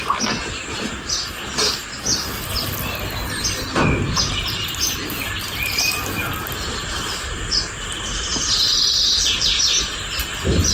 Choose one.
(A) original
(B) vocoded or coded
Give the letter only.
A